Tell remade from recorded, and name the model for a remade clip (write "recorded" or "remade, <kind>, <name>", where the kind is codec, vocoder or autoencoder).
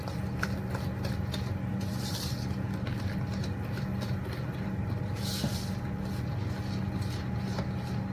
recorded